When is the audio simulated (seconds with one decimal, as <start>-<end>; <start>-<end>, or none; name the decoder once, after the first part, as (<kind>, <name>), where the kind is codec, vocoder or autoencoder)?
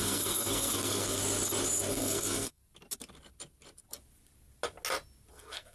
0.0-1.2 (codec, SNAC); 1.9-2.6; 5.3-5.7